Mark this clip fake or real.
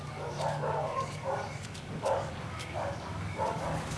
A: fake